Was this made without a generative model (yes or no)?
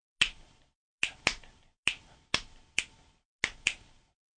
yes